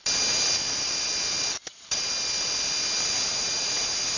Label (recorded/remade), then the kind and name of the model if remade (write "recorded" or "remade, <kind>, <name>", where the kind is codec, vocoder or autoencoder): recorded